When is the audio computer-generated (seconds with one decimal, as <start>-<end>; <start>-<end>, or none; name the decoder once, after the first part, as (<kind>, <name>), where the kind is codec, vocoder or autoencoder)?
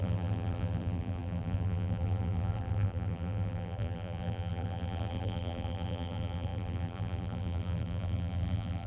0.0-8.9 (vocoder, BigVGAN v2)